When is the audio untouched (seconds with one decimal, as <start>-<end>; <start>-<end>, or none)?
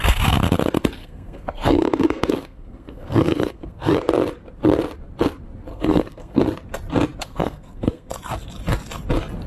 0.0-1.0; 4.0-5.7; 6.4-7.2; 8.1-9.5